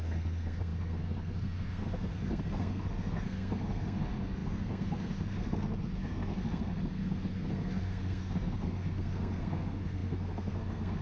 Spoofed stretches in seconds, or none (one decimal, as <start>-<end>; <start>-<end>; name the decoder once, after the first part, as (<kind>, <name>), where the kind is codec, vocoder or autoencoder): 0.0-11.0 (codec, SNAC)